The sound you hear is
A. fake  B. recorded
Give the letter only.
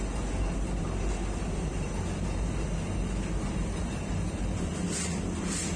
B